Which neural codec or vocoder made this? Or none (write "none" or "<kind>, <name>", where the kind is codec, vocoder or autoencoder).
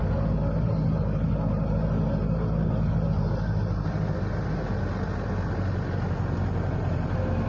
none